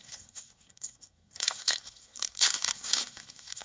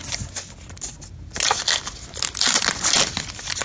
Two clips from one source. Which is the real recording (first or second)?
second